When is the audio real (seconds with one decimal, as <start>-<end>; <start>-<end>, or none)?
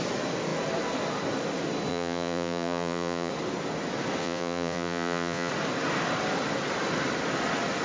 0.0-1.9; 3.3-4.2; 5.5-7.8